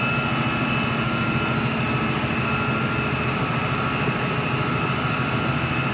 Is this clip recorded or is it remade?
recorded